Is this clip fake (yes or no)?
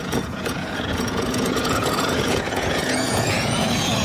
yes